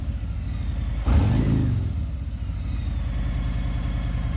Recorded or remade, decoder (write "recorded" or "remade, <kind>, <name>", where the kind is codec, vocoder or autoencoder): recorded